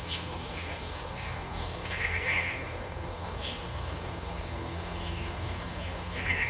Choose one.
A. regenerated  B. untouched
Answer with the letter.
A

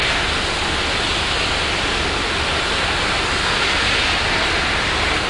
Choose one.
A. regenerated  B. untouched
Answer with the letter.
B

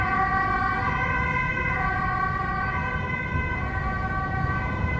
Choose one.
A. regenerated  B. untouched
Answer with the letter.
B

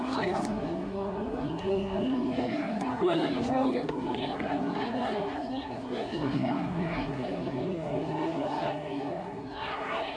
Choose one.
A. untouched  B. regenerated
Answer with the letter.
B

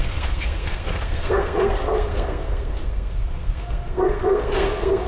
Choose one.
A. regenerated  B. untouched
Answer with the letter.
A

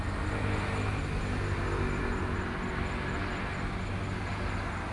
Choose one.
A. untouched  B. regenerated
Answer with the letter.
A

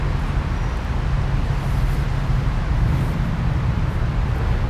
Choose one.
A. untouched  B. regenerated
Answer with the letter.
A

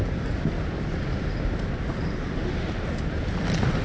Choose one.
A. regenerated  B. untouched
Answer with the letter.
B